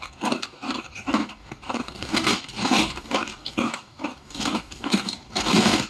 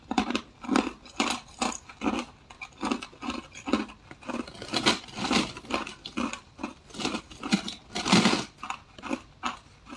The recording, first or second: second